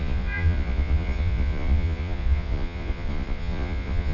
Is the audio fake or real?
fake